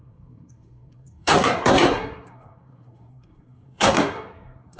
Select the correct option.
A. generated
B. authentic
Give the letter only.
A